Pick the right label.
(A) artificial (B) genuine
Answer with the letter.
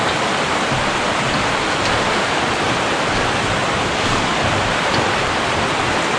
B